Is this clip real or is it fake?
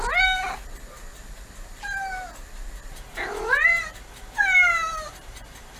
real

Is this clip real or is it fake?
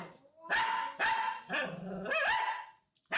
real